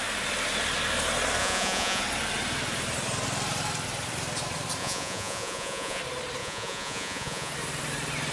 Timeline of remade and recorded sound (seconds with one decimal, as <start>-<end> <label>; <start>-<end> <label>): 0.0-1.4 recorded; 1.4-2.0 remade; 2.0-4.8 recorded; 4.8-6.0 remade; 6.0-6.4 recorded; 6.4-7.5 remade; 7.5-8.3 recorded